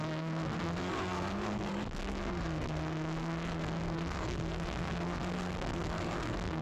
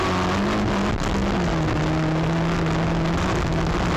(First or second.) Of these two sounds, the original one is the second